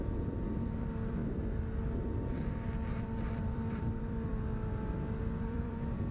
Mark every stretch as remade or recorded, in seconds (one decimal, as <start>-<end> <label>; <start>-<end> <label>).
0.0-1.2 remade; 1.2-2.9 recorded; 2.9-4.3 remade; 4.3-5.4 recorded; 5.4-6.1 remade